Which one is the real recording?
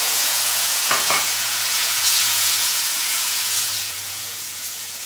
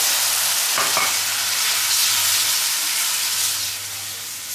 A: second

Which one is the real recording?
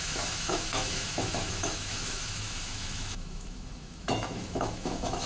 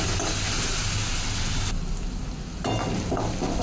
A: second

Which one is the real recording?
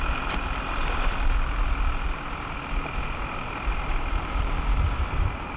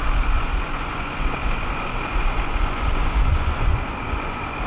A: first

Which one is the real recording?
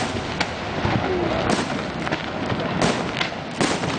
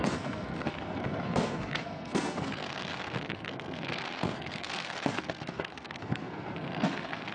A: first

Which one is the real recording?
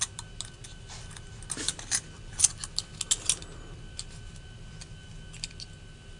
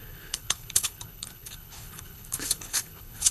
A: first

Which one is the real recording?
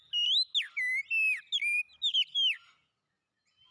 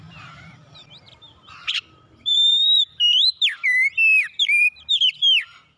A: first